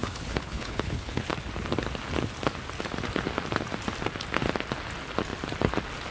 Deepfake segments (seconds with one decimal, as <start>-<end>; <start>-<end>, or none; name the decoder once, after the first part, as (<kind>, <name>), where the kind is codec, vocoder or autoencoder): 0.0-1.3 (codec, HILCodec)